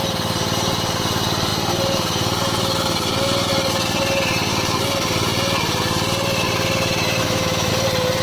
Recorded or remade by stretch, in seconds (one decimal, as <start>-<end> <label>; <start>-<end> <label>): 0.0-7.2 recorded; 7.2-7.7 remade; 7.7-8.2 recorded